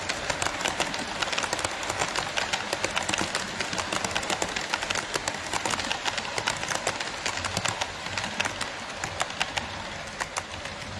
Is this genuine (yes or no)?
yes